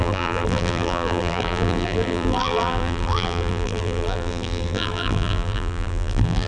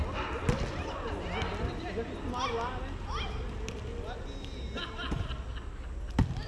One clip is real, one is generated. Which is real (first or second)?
second